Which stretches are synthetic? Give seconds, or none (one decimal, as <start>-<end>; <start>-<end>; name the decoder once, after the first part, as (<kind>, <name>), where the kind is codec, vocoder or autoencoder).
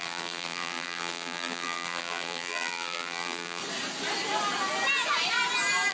0.0-3.6 (vocoder, BigVGAN v2)